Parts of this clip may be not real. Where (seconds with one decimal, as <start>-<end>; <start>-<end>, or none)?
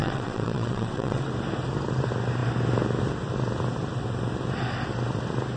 0.0-1.3